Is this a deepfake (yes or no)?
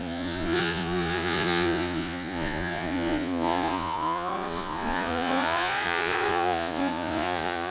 yes